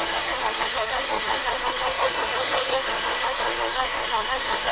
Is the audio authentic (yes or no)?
no